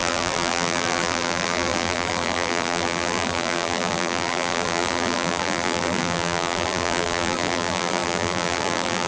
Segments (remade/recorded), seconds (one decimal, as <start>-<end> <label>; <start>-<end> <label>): 0.0-9.1 remade